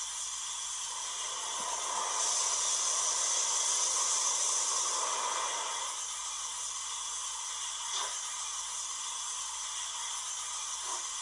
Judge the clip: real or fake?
real